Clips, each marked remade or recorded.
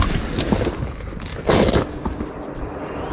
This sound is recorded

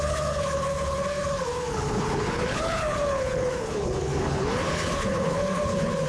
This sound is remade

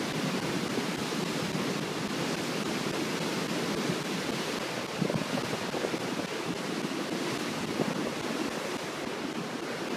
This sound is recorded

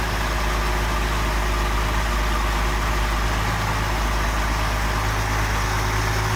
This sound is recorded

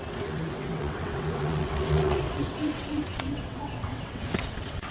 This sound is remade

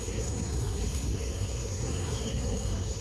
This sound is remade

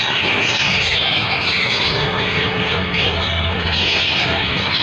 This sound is remade